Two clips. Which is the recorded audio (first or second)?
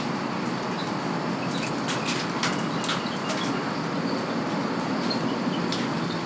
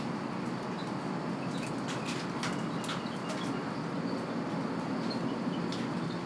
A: second